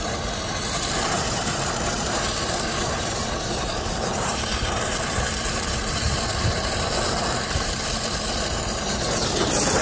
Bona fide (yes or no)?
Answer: no